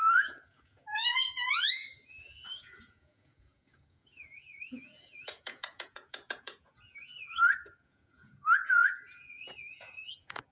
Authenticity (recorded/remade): remade